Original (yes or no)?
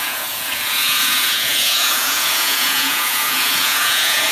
no